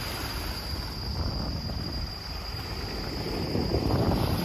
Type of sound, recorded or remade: recorded